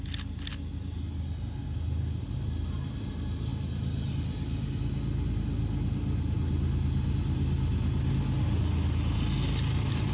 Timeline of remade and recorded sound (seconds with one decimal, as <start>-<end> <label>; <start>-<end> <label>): 0.0-10.1 recorded